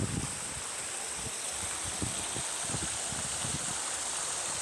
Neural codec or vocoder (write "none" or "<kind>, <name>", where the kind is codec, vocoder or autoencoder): none